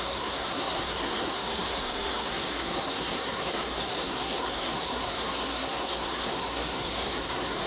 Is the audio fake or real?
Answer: fake